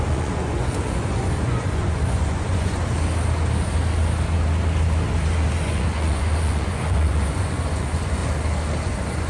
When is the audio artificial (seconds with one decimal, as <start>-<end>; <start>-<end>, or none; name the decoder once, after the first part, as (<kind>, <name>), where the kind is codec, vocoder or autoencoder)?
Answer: 0.0-2.8 (vocoder, Vocos); 5.6-8.2; 8.8-9.3